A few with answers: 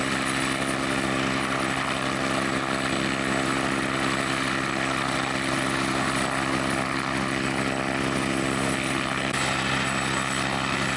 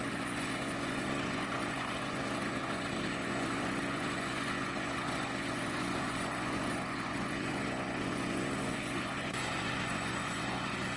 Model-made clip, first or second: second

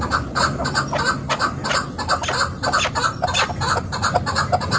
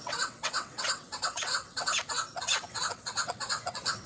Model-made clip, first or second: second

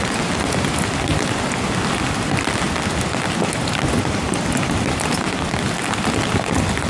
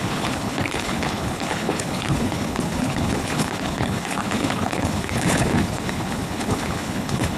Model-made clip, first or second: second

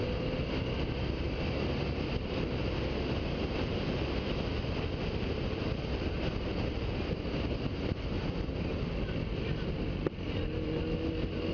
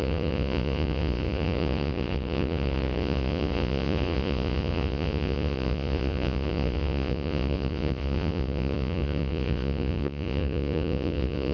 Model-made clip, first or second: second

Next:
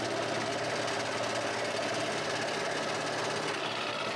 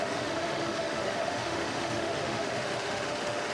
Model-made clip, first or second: second